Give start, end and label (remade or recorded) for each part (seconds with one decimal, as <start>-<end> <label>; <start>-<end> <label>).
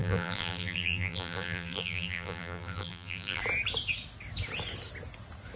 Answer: 0.0-3.4 remade; 3.4-5.6 recorded